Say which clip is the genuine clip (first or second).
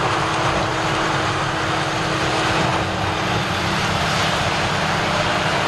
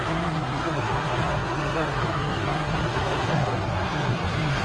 first